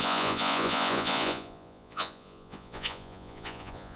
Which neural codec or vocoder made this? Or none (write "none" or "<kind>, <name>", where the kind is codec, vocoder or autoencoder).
vocoder, Vocos